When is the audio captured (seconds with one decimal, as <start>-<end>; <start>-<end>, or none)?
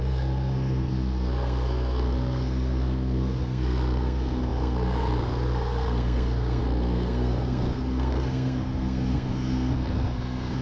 none